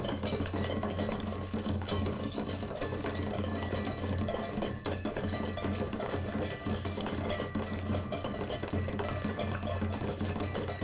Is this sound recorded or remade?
remade